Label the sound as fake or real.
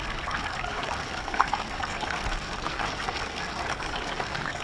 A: fake